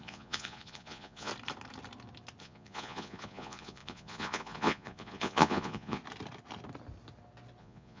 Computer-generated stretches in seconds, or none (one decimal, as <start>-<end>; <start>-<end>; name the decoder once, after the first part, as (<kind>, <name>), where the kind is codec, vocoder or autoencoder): 0.0-1.3 (vocoder, Vocos); 2.4-6.0; 7.6-8.0